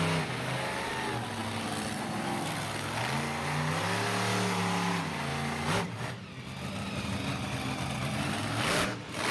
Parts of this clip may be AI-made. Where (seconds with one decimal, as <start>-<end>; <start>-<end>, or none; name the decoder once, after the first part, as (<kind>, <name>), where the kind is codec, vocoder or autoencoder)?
none